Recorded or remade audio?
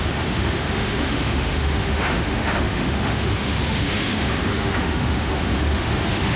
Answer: remade